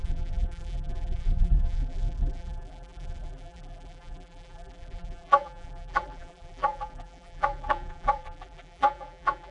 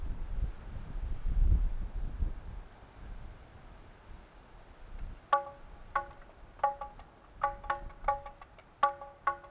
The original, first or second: second